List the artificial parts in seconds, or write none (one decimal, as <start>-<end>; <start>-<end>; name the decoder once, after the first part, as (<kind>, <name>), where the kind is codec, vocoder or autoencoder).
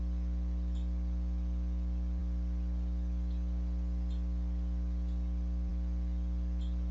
none